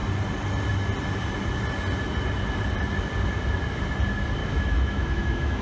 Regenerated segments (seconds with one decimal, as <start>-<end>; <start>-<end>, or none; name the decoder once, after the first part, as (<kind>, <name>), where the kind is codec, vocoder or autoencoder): 4.4-5.6 (autoencoder, DAC-VAE)

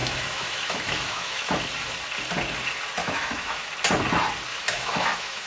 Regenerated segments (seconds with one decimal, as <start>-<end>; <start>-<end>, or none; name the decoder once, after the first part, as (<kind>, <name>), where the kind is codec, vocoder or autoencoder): 0.0-1.5 (autoencoder, DAC-VAE); 3.0-3.7; 4.5-5.5